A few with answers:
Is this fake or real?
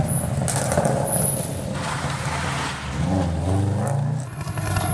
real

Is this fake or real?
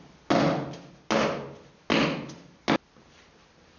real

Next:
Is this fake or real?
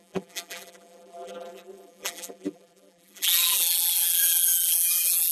fake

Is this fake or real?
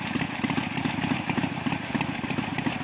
real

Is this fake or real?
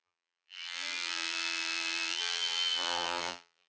fake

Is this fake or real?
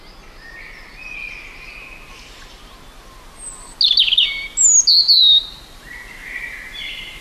real